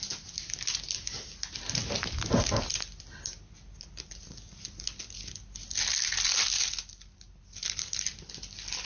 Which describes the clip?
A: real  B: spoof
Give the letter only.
A